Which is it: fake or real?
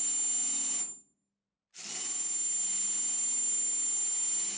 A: real